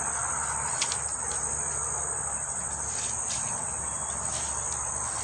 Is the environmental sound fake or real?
real